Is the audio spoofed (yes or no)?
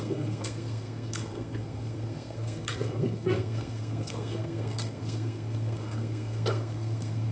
yes